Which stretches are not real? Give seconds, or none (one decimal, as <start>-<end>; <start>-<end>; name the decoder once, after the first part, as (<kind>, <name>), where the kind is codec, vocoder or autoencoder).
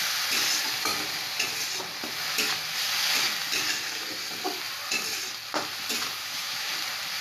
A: 6.2-6.7 (autoencoder, DAC-VAE)